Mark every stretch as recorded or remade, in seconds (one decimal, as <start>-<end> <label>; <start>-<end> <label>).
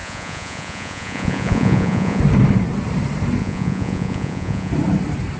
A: 0.0-2.2 remade; 2.2-3.4 recorded; 3.4-4.7 remade; 4.7-5.4 recorded